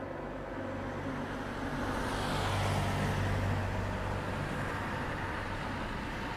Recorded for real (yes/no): yes